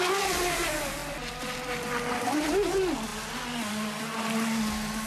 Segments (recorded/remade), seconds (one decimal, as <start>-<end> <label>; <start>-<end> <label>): 0.0-5.1 recorded